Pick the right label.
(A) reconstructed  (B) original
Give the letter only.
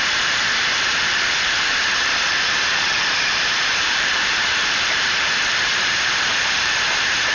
A